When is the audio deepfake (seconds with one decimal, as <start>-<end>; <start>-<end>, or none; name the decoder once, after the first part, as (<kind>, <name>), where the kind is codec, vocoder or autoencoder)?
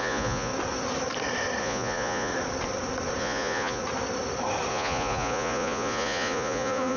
0.0-0.5 (vocoder, Vocos); 1.6-2.3; 3.2-3.8; 4.7-7.0